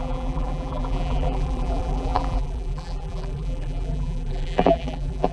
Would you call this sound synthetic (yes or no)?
yes